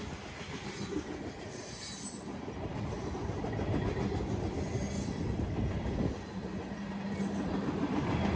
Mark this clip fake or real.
real